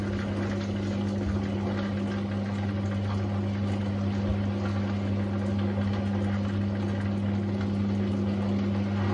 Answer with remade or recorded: recorded